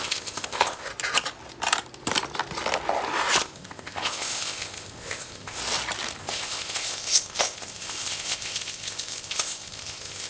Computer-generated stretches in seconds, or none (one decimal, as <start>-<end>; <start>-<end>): 0.0-0.9; 3.4-5.6; 6.2-10.3